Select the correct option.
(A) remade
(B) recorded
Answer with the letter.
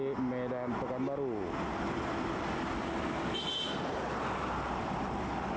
B